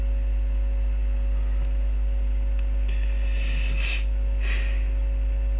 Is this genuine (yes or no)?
yes